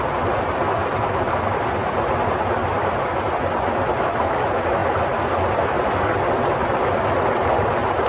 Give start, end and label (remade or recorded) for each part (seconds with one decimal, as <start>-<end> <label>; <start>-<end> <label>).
0.0-8.1 recorded